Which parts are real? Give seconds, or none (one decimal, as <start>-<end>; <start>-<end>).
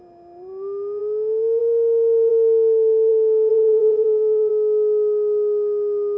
0.0-3.5; 4.5-6.2